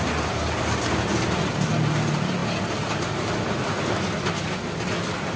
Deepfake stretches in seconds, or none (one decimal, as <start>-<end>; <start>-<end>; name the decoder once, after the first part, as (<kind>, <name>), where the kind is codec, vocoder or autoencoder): none